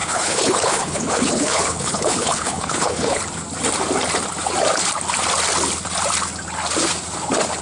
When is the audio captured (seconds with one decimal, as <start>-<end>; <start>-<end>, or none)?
3.2-7.6